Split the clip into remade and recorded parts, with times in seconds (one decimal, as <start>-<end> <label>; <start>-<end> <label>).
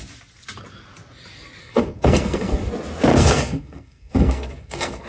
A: 0.0-1.6 recorded; 1.6-2.7 remade; 2.7-3.1 recorded; 3.1-5.1 remade